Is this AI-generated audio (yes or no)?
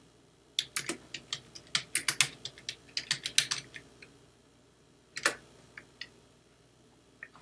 no